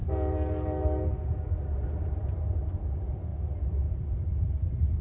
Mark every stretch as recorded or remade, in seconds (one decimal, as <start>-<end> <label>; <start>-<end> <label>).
0.0-1.7 recorded; 1.7-3.3 remade; 3.3-4.2 recorded; 4.2-5.0 remade